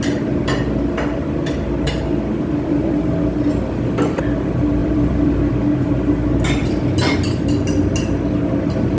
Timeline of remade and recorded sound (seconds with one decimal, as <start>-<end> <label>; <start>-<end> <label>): 0.0-4.8 recorded; 4.8-5.5 remade; 5.5-6.6 recorded; 6.6-7.5 remade; 7.5-9.0 recorded